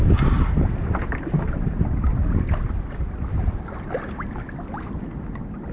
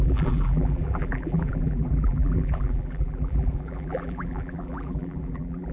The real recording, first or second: first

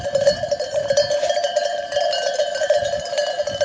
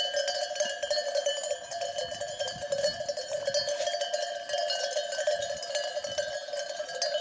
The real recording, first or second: second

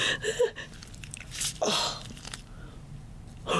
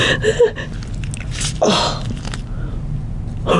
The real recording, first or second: second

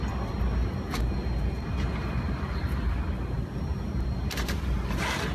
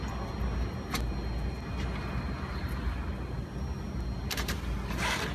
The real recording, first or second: second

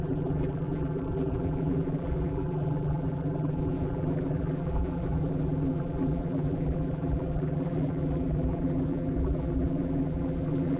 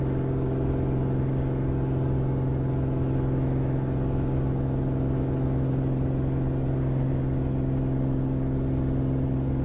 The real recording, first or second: second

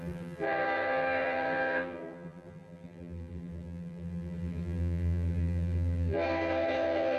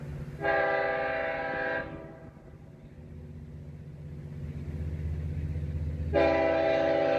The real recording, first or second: second